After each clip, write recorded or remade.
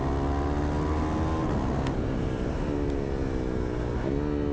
recorded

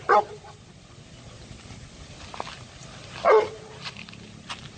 recorded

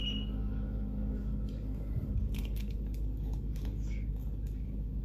remade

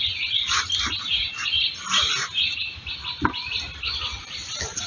remade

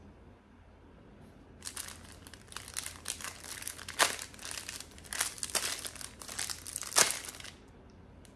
recorded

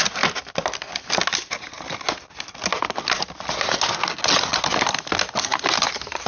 recorded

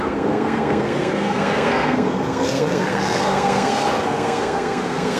remade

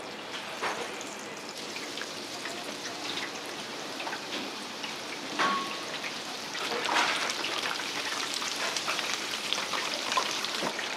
remade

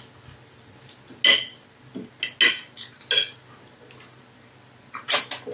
recorded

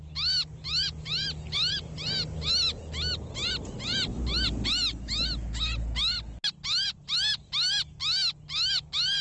recorded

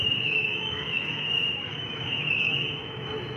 remade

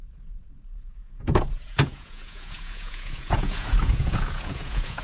remade